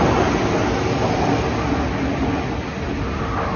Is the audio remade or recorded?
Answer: recorded